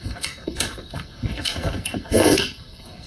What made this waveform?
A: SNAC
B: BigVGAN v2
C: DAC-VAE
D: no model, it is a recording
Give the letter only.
A